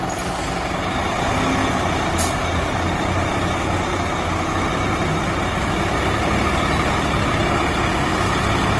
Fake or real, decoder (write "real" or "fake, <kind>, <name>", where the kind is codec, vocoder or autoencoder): real